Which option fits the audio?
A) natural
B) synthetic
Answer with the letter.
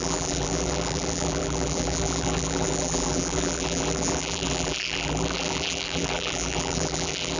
B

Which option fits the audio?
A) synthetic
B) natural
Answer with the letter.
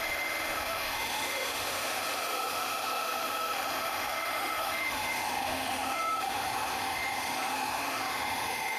A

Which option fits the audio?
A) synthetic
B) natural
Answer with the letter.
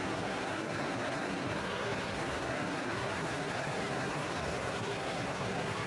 A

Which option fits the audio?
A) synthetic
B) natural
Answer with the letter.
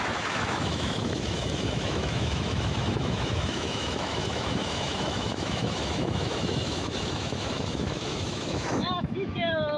A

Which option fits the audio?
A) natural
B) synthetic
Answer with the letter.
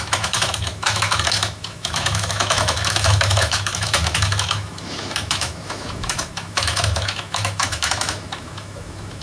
B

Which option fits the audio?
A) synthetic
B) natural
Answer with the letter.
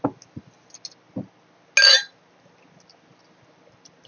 B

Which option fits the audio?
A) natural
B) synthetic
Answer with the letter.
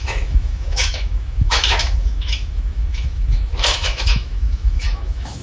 B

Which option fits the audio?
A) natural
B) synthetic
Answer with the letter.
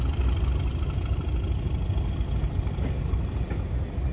A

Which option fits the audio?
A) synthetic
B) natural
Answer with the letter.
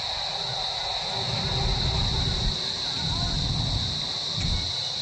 B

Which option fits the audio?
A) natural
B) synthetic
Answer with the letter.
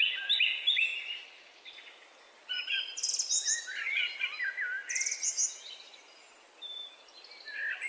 A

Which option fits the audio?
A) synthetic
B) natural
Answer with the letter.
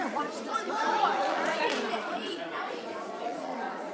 A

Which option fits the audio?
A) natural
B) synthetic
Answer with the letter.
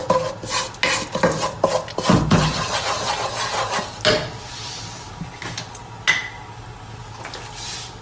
A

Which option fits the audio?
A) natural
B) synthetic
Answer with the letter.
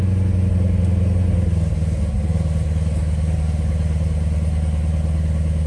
A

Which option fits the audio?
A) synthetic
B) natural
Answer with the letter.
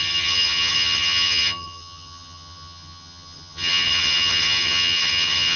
A